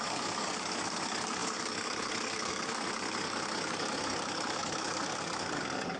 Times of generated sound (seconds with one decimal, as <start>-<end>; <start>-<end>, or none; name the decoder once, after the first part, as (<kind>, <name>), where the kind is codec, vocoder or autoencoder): 0.0-6.0 (codec, DAC)